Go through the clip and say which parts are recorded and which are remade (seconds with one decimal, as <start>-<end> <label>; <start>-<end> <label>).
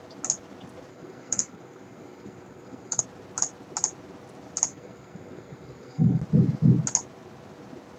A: 0.0-0.9 recorded; 0.9-3.0 remade; 3.0-4.7 recorded; 4.7-6.2 remade; 6.2-8.0 recorded